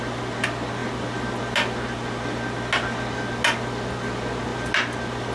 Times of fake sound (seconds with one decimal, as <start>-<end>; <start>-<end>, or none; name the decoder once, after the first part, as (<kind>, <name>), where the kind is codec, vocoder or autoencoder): none